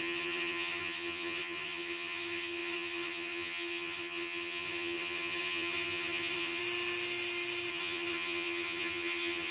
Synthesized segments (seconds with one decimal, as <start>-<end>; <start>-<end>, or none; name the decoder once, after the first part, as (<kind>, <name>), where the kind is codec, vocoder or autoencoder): 0.0-6.6 (vocoder, HiFi-GAN); 7.7-9.5